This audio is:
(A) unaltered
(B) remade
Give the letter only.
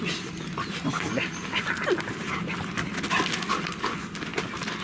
A